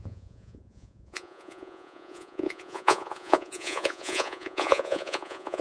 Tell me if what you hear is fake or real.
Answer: fake